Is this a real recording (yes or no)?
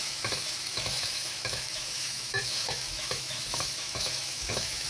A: no